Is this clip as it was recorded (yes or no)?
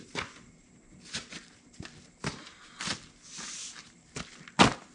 yes